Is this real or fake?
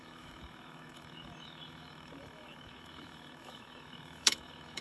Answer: fake